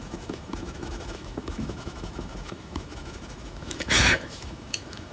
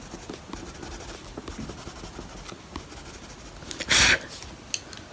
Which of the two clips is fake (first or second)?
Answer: first